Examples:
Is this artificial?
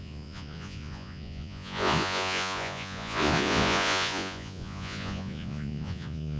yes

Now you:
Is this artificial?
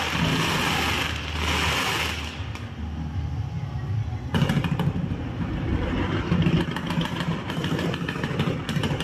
no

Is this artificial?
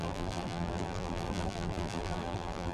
yes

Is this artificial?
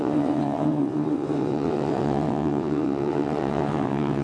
yes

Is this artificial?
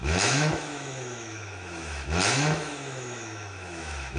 yes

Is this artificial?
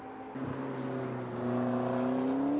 no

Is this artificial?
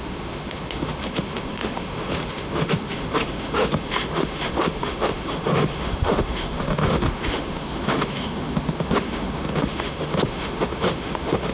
yes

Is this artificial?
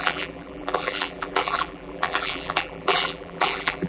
yes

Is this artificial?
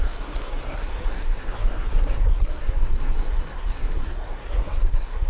yes